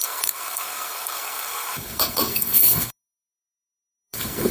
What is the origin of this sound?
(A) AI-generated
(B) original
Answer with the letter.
A